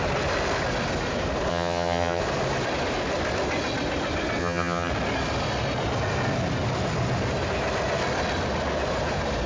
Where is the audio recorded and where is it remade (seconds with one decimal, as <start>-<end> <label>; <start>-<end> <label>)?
0.0-1.5 recorded; 1.5-2.2 remade; 2.2-4.4 recorded; 4.4-4.9 remade; 4.9-9.5 recorded